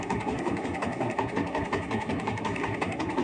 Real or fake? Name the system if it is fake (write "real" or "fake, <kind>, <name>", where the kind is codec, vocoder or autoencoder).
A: fake, codec, SNAC